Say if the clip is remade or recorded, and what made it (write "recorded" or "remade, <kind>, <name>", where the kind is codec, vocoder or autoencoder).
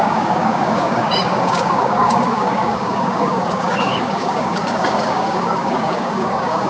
remade, codec, DAC